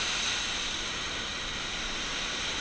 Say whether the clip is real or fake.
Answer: real